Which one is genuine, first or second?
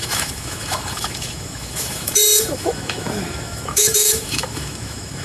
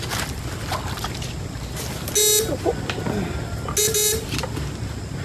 second